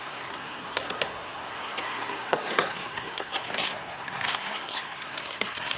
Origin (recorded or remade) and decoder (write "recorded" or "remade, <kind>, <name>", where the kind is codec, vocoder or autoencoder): remade, codec, SNAC